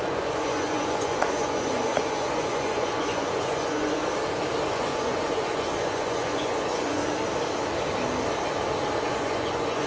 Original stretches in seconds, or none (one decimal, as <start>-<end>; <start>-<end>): 4.0-4.7; 7.0-9.0